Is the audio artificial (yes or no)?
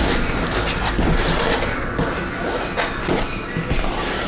no